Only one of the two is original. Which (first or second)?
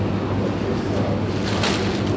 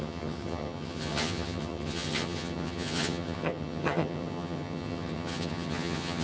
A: first